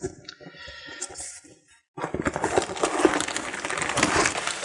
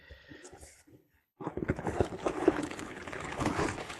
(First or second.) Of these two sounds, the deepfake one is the second